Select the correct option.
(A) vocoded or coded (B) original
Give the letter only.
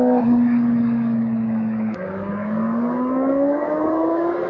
A